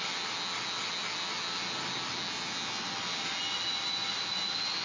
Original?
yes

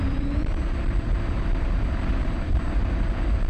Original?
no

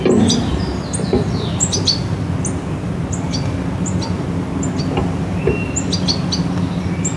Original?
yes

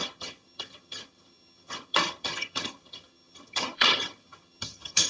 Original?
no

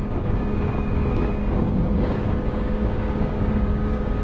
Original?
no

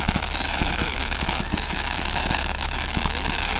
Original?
no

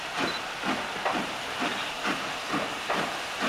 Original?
yes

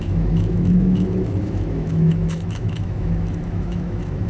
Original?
no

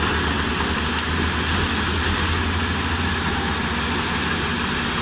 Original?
yes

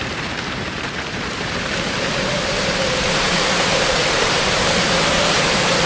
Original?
no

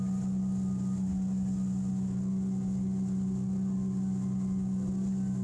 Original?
yes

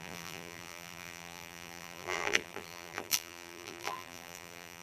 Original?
no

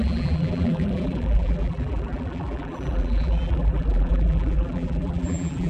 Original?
no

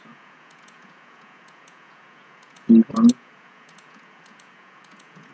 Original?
no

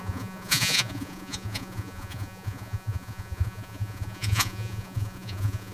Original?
no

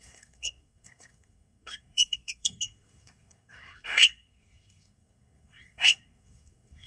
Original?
no